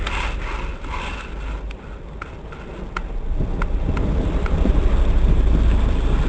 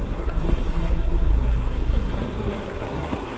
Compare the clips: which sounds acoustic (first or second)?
first